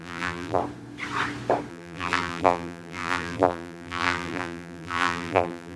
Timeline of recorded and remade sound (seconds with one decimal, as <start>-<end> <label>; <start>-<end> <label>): 0.0-0.6 remade; 0.6-1.7 recorded; 1.7-5.8 remade